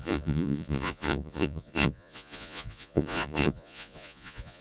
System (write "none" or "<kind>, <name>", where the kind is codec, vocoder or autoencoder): vocoder, Vocos